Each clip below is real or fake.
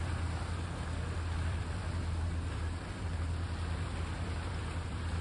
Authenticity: fake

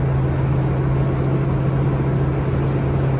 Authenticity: real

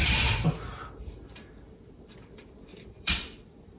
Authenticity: fake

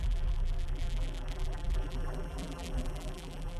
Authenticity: fake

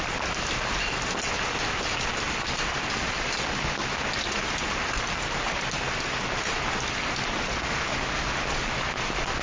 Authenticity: real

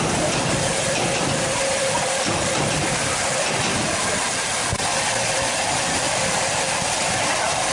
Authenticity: real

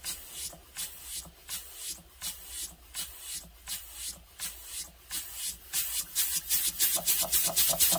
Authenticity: real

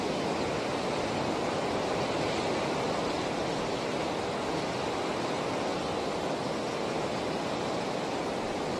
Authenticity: real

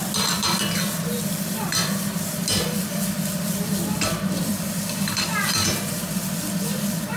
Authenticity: fake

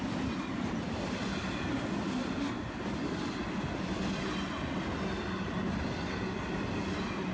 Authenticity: real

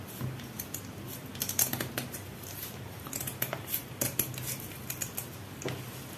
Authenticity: real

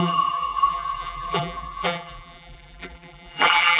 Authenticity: fake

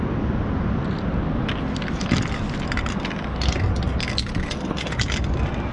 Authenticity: real